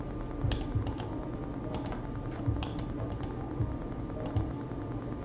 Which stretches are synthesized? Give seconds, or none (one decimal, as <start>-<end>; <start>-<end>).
none